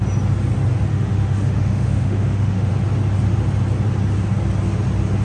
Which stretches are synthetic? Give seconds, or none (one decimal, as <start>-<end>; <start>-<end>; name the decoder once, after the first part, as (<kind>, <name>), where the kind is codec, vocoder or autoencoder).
0.9-2.7 (autoencoder, DAC-VAE)